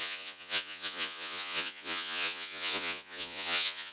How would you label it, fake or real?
fake